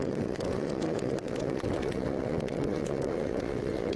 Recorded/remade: remade